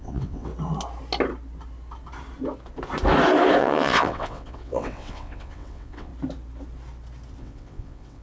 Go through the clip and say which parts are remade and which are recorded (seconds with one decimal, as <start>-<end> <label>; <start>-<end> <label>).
0.0-0.5 remade; 0.5-3.6 recorded; 3.6-6.1 remade; 6.1-7.4 recorded; 7.4-8.2 remade